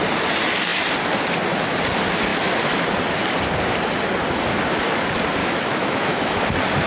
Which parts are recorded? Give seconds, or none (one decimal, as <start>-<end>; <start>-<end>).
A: 0.0-5.4; 6.4-6.9